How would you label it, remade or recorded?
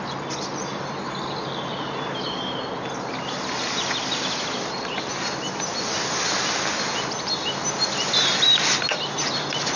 recorded